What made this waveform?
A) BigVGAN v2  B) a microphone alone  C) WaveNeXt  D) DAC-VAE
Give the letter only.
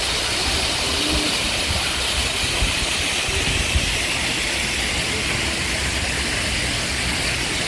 B